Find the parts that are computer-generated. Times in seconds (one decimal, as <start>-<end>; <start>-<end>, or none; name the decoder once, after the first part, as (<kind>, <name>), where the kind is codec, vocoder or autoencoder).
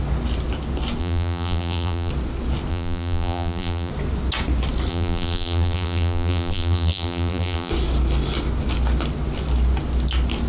1.0-2.1 (vocoder, BigVGAN v2); 2.7-3.9; 4.9-7.7